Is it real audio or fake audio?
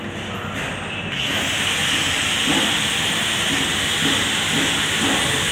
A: real